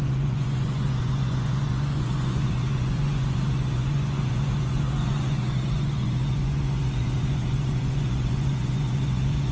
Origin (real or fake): fake